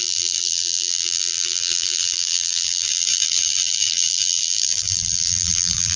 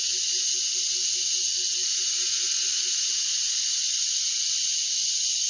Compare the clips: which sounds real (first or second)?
second